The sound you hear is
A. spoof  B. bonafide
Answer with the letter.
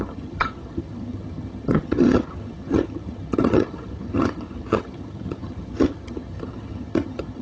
A